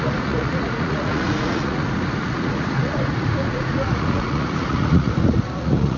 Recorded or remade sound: remade